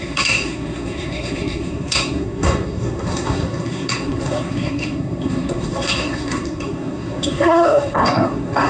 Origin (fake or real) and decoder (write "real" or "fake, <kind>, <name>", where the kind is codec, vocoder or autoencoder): fake, codec, SNAC